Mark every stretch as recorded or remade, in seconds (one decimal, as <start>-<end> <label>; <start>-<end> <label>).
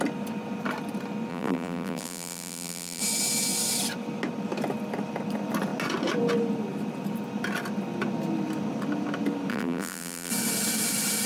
0.0-1.3 recorded; 1.3-3.0 remade; 3.0-9.5 recorded; 9.5-10.3 remade; 10.3-11.3 recorded